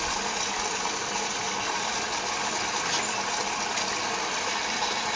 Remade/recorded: recorded